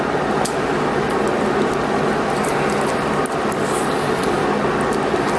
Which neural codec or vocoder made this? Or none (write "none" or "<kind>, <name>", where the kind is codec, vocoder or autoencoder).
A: none